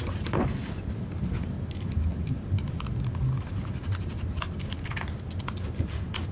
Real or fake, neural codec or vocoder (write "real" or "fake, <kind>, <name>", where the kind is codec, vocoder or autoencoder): real